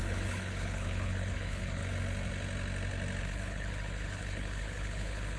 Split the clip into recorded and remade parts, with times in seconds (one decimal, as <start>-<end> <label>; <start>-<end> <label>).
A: 0.0-1.8 remade; 1.8-3.2 recorded; 3.2-5.4 remade